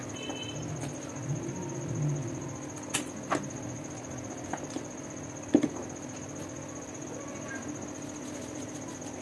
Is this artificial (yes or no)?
no